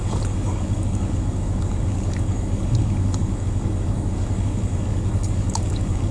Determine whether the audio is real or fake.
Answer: fake